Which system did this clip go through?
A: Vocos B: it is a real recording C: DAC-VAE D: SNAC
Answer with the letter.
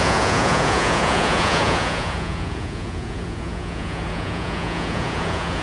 A